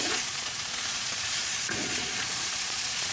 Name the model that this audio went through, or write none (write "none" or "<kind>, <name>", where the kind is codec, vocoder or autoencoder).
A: vocoder, Vocos